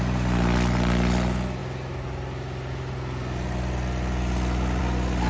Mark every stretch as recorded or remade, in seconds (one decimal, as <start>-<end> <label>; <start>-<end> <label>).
0.0-5.3 recorded